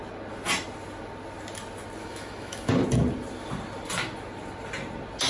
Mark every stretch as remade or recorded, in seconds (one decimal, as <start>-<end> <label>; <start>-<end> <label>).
0.0-2.0 recorded; 2.0-2.7 remade; 2.7-5.3 recorded